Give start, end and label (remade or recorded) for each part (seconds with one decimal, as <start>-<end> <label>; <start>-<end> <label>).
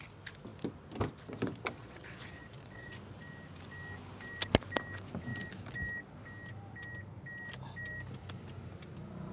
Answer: 0.0-1.8 recorded; 1.8-2.9 remade; 2.9-9.3 recorded